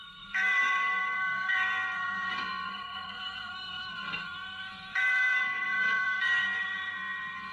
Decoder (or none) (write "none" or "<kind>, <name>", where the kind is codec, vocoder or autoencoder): codec, SNAC